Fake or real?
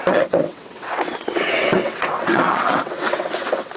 fake